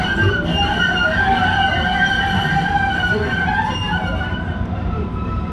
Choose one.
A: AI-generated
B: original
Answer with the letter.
B